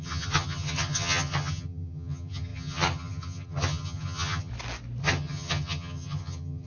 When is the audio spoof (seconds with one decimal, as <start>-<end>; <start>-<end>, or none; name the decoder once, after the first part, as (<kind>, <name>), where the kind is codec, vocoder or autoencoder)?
0.0-4.5 (vocoder, HiFi-GAN); 5.0-6.7